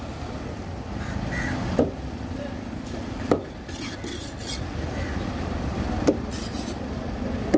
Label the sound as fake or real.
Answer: real